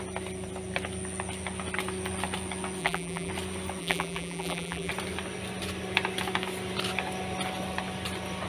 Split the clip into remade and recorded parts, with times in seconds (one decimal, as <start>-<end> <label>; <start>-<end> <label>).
0.0-2.8 recorded; 2.8-3.3 remade; 3.3-3.8 recorded; 3.8-4.9 remade; 4.9-8.5 recorded